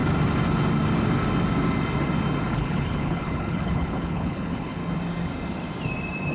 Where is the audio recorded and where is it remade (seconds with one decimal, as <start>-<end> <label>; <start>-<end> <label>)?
0.0-2.5 recorded; 2.5-4.8 remade; 4.8-6.3 recorded